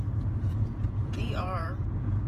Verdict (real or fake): fake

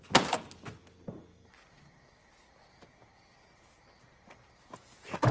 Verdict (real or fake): real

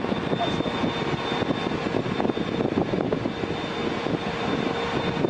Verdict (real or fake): real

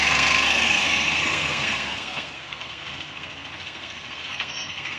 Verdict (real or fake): fake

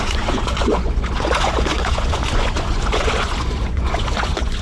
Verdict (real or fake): fake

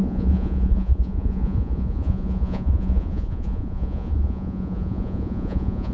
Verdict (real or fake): fake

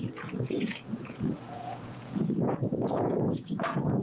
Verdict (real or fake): fake